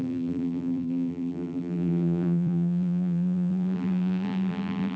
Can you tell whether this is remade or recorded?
remade